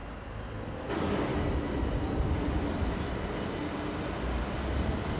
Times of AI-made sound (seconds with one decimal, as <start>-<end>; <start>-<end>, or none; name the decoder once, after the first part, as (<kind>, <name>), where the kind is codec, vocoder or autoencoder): 0.9-1.3 (codec, DAC); 4.4-5.2

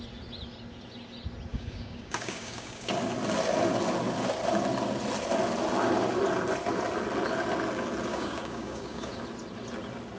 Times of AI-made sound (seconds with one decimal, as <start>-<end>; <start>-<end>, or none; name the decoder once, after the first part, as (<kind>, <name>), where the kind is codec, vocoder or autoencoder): 1.5-2.9 (codec, DAC); 8.1-9.1

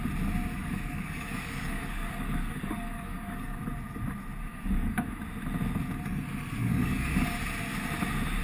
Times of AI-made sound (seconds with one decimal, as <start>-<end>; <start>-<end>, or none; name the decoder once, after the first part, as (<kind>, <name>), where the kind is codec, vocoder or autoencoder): 0.5-3.6 (codec, DAC); 4.5-5.2; 6.6-7.4

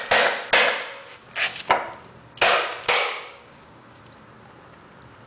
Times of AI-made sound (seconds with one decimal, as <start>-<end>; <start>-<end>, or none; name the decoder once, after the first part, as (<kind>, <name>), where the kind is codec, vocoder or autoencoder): 2.7-4.0 (codec, DAC)

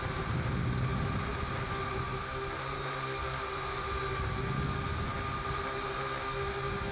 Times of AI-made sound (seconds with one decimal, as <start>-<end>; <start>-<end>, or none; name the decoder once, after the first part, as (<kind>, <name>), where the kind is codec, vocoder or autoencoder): none

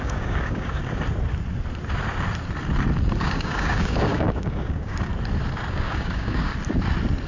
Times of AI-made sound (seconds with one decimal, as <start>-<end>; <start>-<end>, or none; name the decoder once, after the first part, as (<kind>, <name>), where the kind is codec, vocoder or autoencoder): 0.0-0.8 (codec, DAC); 3.2-5.1; 5.7-6.5

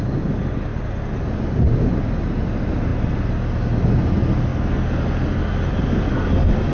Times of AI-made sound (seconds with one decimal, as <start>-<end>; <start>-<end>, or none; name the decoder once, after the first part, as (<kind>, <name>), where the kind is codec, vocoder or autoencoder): none

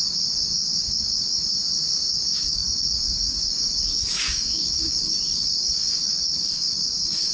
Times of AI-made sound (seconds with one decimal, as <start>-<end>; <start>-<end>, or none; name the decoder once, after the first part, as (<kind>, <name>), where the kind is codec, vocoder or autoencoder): 0.0-1.6 (codec, DAC); 2.1-7.3